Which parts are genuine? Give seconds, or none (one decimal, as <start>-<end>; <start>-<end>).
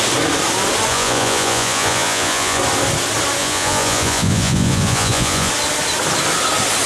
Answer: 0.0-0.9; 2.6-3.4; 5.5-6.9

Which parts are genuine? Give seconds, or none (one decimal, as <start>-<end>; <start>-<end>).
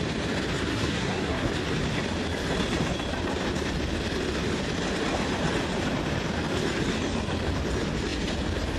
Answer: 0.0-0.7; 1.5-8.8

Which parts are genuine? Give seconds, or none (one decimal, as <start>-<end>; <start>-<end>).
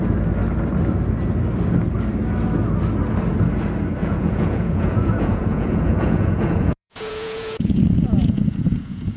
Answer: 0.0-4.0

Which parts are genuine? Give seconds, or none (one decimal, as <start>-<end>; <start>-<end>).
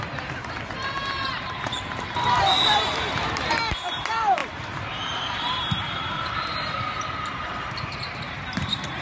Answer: none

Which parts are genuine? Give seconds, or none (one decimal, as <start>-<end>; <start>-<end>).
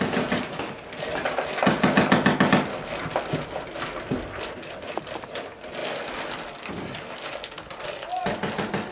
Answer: 0.0-8.9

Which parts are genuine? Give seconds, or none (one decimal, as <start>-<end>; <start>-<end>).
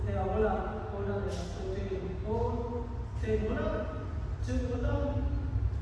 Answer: 0.0-5.8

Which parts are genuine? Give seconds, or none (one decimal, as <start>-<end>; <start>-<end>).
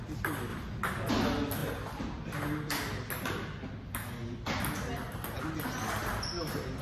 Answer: 0.0-6.8